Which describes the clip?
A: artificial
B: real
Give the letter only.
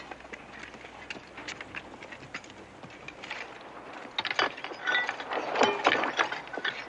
B